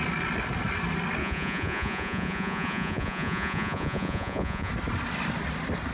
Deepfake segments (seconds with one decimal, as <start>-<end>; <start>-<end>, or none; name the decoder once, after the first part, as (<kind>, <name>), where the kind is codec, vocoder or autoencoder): 1.2-4.7 (vocoder, Vocos)